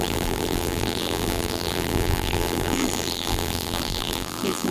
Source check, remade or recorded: remade